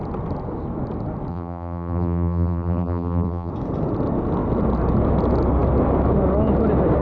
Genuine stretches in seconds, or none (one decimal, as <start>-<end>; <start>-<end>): 0.0-1.3; 3.5-7.0